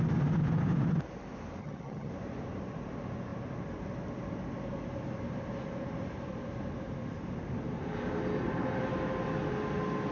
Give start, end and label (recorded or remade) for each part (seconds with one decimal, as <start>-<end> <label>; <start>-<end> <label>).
0.0-1.6 recorded; 1.6-2.1 remade; 2.1-10.1 recorded